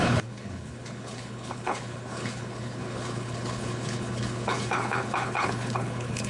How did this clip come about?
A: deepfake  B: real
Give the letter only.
A